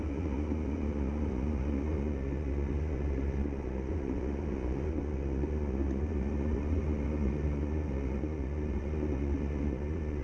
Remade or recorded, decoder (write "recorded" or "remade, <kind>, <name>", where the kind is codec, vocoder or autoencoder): remade, vocoder, Vocos